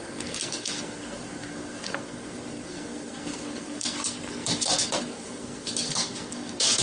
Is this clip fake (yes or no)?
yes